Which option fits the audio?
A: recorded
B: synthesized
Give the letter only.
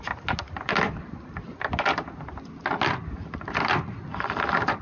A